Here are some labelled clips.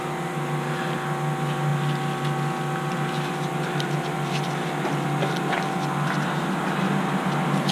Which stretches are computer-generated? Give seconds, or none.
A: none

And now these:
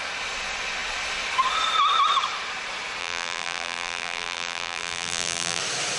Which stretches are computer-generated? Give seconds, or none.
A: 3.0-5.6 (vocoder, BigVGAN v2)

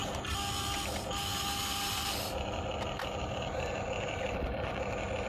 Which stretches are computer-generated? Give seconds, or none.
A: none

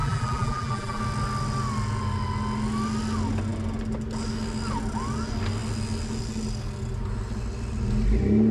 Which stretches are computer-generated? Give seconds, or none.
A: 0.0-1.0 (vocoder, BigVGAN v2)

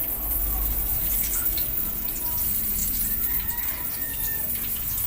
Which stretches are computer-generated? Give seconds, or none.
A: 0.0-0.4 (vocoder, BigVGAN v2); 2.1-2.8

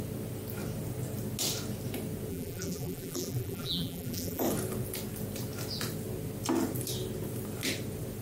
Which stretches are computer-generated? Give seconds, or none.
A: 2.3-4.4 (vocoder, BigVGAN v2)

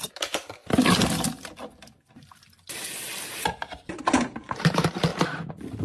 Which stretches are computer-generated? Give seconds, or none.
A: 0.0-0.6 (vocoder, BigVGAN v2); 3.2-5.1